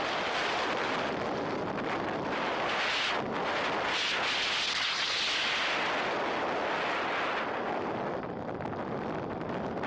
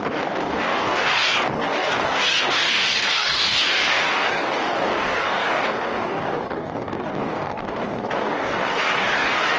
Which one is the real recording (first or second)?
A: first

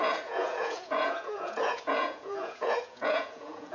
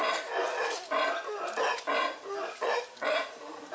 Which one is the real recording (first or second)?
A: second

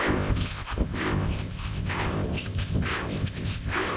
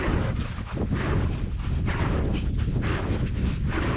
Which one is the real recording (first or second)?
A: second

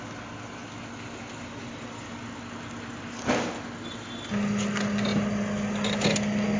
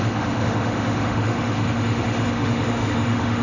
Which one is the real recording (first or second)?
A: first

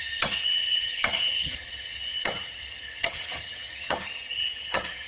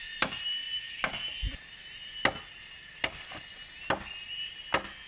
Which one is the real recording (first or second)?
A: second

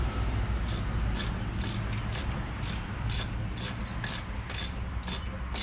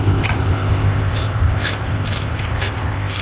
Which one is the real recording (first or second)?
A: first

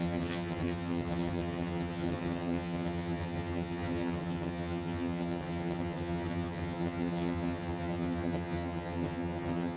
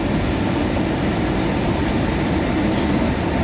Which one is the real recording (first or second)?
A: second